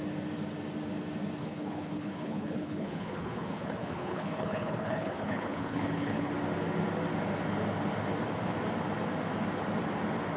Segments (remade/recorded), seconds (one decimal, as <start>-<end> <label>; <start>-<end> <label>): 0.0-1.4 recorded; 1.4-6.3 remade; 6.3-10.4 recorded